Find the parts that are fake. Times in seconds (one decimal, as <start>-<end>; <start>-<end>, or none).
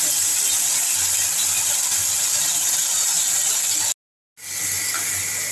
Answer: none